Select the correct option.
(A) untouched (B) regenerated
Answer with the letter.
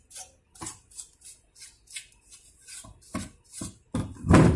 A